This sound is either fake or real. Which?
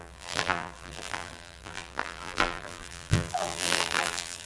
fake